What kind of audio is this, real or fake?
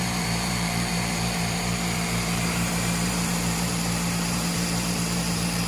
fake